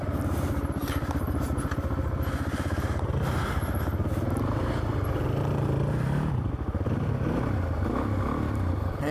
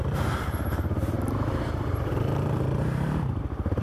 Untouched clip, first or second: first